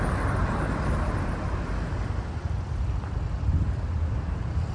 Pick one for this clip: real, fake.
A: real